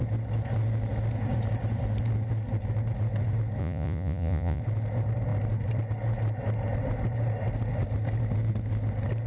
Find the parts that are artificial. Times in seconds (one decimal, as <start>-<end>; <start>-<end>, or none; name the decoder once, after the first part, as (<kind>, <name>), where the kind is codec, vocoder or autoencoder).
3.6-4.6 (vocoder, Vocos)